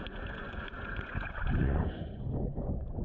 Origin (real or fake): fake